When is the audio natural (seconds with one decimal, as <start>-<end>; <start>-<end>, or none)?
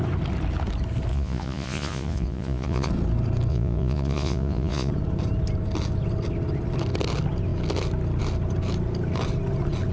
0.0-1.1; 2.9-3.5; 4.9-9.9